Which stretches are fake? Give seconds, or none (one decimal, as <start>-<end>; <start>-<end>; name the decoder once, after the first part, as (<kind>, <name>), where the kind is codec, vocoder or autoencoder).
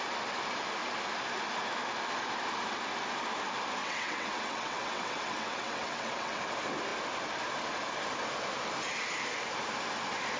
3.8-6.4 (vocoder, WaveNeXt)